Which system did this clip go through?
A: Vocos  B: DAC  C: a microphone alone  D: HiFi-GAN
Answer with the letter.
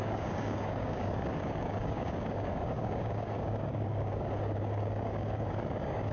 B